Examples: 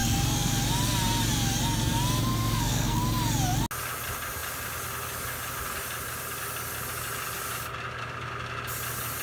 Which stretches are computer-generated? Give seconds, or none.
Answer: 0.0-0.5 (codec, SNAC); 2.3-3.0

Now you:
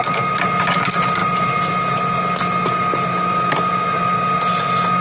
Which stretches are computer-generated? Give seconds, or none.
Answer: none

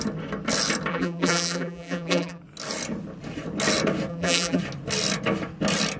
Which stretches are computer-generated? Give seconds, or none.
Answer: 0.9-2.4 (vocoder, BigVGAN v2); 4.1-4.6

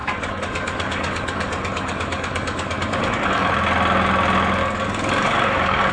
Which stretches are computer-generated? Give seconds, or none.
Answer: 0.0-3.5 (codec, DAC); 4.6-5.9

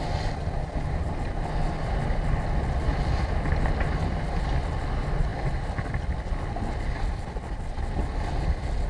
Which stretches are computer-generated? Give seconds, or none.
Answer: none

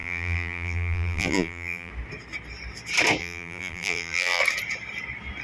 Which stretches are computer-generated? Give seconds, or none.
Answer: 0.0-1.9 (vocoder, BigVGAN v2); 3.2-4.4

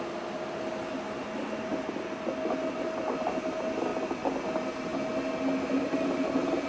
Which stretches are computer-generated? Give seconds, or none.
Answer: none